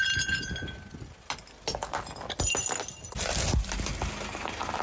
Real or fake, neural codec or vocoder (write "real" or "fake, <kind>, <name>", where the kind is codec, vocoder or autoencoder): real